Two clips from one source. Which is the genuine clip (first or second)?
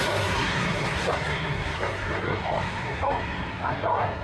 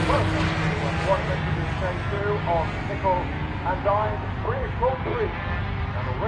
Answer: second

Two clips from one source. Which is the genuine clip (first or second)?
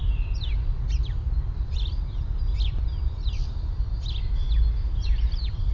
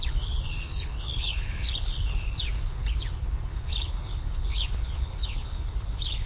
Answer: first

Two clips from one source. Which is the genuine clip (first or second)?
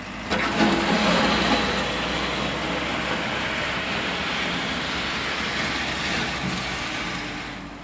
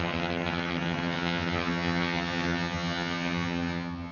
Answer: first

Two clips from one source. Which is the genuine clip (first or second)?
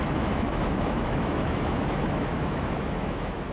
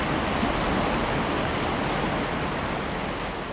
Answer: second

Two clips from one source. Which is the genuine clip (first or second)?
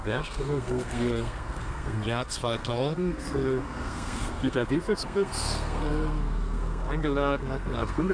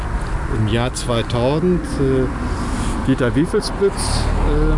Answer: second